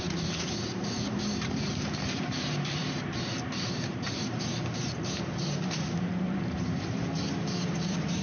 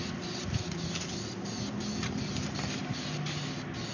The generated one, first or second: first